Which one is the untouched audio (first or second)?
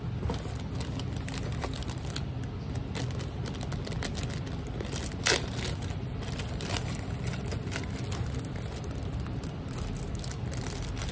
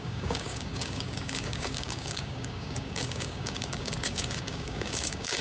first